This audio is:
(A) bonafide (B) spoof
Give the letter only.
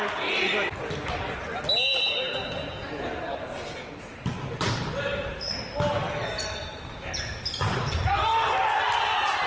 A